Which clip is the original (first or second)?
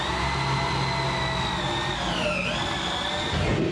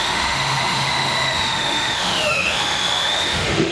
first